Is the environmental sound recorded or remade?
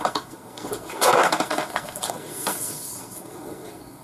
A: remade